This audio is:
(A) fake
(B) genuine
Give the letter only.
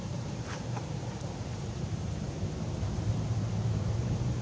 A